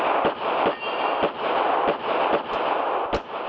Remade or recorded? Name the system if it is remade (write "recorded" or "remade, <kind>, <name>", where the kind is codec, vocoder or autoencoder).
recorded